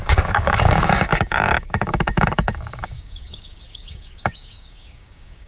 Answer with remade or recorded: remade